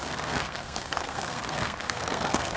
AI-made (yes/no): yes